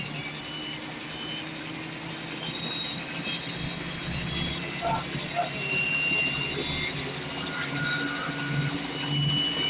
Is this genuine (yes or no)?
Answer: yes